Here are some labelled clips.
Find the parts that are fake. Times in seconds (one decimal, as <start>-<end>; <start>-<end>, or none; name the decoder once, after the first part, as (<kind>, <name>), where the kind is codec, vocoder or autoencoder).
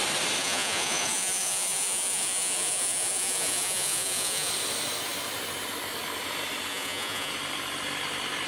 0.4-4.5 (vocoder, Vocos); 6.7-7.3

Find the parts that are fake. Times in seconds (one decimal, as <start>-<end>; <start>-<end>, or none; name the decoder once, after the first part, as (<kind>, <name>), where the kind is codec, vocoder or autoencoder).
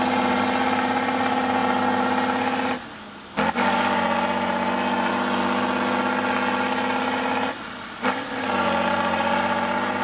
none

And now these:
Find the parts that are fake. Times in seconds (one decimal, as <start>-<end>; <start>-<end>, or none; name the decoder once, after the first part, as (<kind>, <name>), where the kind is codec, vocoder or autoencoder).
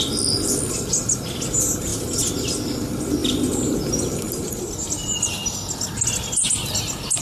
3.2-4.5 (vocoder, BigVGAN v2)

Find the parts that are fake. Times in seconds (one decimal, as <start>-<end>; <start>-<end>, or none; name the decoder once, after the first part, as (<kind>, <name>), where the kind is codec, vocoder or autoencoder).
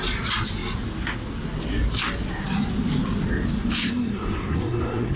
3.8-5.2 (codec, SNAC)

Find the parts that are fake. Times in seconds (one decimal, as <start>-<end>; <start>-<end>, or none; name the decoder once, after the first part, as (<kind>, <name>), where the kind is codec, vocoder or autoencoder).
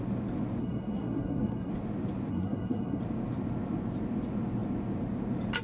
0.6-1.7 (codec, SNAC); 2.3-3.0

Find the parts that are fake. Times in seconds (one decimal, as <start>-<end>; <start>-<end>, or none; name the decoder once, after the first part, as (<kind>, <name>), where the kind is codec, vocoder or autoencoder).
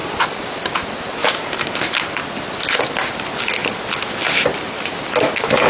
1.2-1.8 (vocoder, BigVGAN v2)